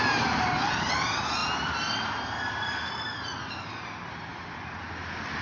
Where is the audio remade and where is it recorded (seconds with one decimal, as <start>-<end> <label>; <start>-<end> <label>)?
0.0-5.4 recorded